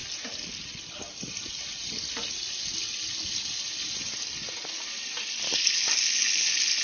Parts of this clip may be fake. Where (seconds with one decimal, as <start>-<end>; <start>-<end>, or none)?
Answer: none